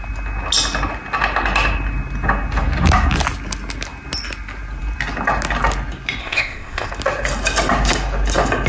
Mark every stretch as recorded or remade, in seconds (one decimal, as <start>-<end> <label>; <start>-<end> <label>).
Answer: 0.0-6.2 recorded; 6.2-6.9 remade; 6.9-8.7 recorded